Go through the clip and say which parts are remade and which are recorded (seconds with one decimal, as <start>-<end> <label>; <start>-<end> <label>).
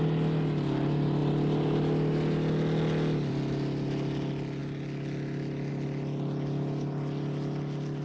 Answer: 0.0-8.0 recorded